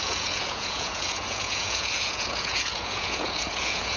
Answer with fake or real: fake